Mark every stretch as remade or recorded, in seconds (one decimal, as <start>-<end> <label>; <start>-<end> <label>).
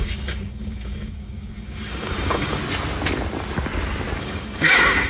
0.0-2.6 remade; 2.6-4.2 recorded; 4.2-5.1 remade